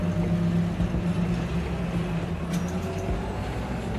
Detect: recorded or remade recorded